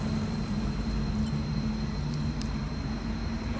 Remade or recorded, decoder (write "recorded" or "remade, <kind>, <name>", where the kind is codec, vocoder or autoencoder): remade, vocoder, BigVGAN v2